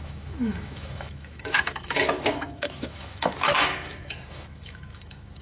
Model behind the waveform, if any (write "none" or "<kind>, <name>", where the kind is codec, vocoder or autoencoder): autoencoder, DAC-VAE